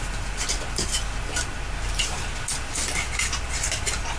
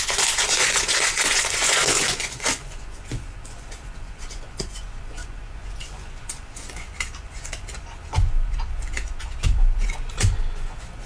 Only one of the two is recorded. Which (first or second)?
first